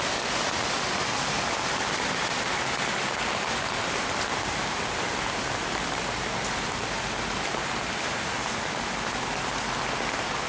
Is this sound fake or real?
real